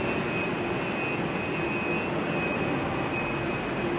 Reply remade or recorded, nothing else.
recorded